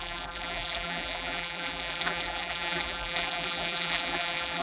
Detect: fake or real fake